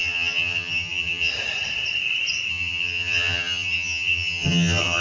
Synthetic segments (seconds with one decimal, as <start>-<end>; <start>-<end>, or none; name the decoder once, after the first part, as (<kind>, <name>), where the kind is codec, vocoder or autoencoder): 0.0-1.3 (vocoder, HiFi-GAN); 2.5-5.0